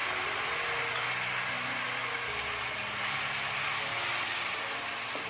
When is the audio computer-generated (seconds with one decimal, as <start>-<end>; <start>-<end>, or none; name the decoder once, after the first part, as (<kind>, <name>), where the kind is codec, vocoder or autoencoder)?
none